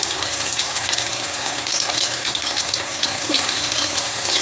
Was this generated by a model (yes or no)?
yes